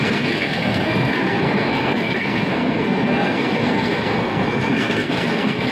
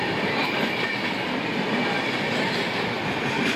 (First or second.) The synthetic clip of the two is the first